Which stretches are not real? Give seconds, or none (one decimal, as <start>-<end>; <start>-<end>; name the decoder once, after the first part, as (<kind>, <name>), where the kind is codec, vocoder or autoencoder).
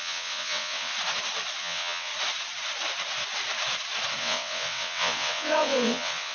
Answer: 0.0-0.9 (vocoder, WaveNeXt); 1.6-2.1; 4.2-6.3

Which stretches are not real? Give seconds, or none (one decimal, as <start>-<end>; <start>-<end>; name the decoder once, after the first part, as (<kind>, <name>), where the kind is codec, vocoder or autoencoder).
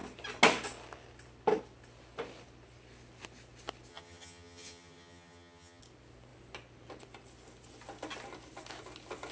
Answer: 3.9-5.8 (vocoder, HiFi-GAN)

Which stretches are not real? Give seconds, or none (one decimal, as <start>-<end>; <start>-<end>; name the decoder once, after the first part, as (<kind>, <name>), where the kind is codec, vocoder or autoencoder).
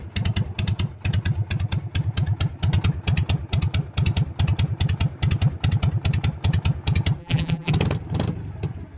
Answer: 7.2-7.7 (vocoder, BigVGAN v2)